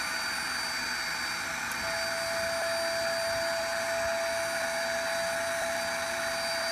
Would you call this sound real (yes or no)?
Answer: yes